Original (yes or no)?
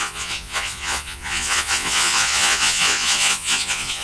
no